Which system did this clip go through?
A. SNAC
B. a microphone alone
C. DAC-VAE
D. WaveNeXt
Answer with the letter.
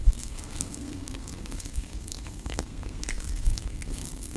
A